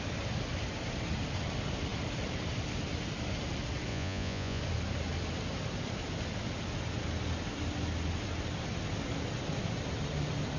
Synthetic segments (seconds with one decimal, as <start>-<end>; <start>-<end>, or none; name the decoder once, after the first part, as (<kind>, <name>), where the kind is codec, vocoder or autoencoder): 3.9-4.6 (vocoder, Vocos)